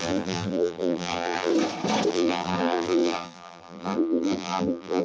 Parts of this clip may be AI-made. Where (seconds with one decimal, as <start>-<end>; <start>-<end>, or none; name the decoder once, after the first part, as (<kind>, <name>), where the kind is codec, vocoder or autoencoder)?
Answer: 0.0-1.5 (vocoder, BigVGAN v2); 2.1-5.0